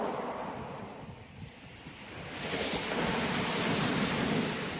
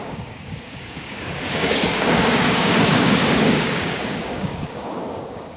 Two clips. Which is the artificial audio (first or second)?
second